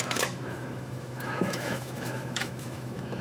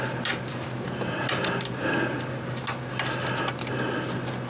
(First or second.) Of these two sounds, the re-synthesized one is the first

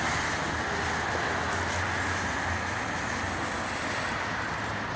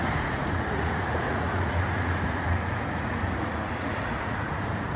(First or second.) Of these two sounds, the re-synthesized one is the second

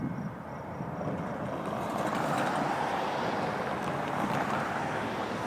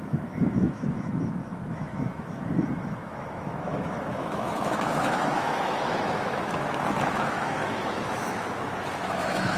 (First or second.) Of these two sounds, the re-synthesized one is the second